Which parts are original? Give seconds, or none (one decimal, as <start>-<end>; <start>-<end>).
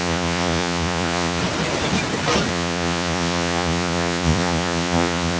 1.4-2.5